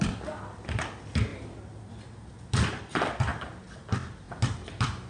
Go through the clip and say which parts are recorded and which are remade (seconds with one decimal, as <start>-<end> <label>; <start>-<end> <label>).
0.0-5.1 recorded